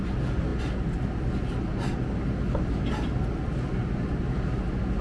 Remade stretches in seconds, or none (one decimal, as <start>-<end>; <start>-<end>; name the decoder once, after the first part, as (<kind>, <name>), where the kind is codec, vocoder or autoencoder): none